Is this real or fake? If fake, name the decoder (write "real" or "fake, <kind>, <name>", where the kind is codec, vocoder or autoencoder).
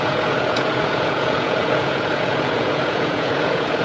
fake, vocoder, Vocos